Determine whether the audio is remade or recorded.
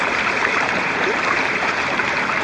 remade